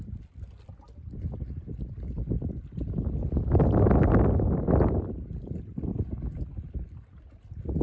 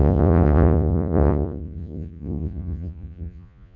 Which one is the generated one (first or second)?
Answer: second